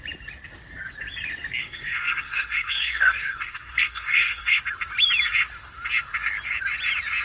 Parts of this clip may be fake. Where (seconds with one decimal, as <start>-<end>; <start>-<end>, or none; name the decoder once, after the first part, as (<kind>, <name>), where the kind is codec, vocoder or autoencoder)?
1.6-4.6 (codec, SNAC)